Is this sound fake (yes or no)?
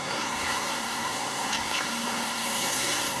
yes